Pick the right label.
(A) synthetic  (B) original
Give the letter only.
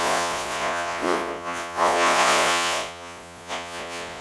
A